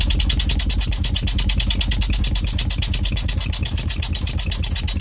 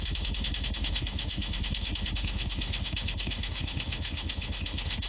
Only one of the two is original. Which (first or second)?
first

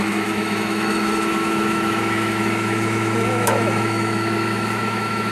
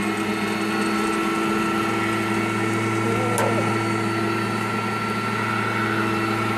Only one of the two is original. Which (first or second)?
second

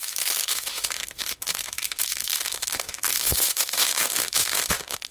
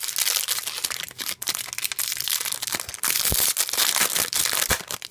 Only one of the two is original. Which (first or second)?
second